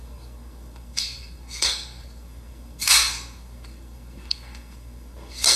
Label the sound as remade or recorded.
remade